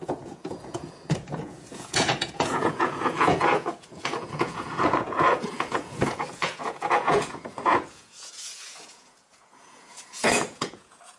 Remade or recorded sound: remade